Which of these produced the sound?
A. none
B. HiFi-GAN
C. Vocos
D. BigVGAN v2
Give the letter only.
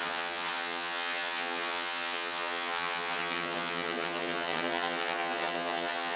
B